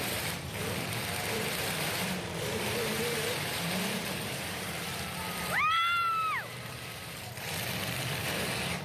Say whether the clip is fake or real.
fake